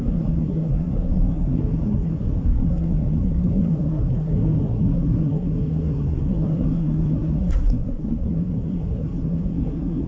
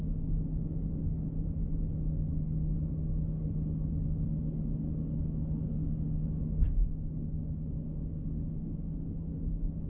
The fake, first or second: first